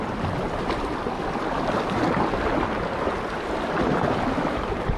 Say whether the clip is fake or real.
real